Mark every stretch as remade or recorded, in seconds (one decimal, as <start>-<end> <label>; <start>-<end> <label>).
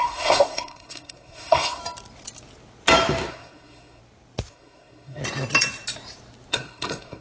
0.0-1.8 remade; 1.8-3.3 recorded; 3.3-4.0 remade; 4.0-4.5 recorded; 4.5-5.2 remade; 5.2-6.5 recorded; 6.5-7.2 remade